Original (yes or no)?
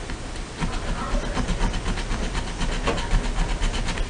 yes